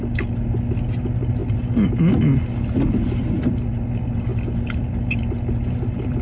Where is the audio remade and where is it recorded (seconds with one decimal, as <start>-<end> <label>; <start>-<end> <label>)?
0.0-6.2 recorded